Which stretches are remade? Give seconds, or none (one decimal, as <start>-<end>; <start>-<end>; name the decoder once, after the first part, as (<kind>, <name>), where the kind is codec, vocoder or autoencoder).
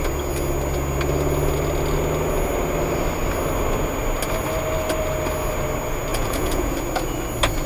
6.1-6.7 (vocoder, Vocos)